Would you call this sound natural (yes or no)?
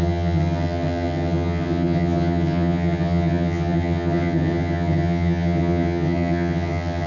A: no